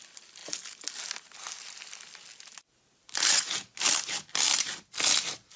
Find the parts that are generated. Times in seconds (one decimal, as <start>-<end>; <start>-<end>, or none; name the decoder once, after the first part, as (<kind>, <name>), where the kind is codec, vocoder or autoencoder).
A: none